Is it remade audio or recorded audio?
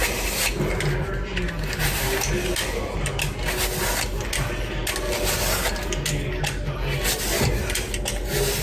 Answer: recorded